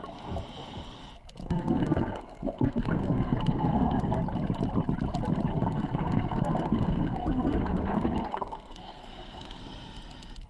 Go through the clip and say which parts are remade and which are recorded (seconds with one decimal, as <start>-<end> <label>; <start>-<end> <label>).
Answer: 0.0-1.4 recorded; 1.4-4.2 remade; 4.2-5.5 recorded; 5.5-9.6 remade; 9.6-10.5 recorded